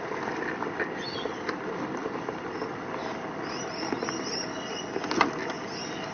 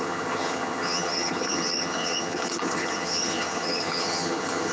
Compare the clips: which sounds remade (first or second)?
second